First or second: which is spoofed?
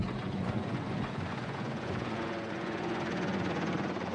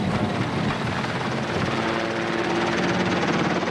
first